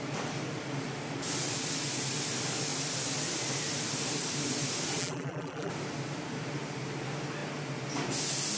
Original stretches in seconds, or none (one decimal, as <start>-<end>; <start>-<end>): 0.0-5.0; 5.7-8.6